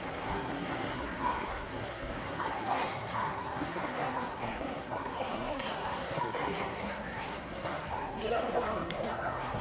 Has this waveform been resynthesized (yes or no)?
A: yes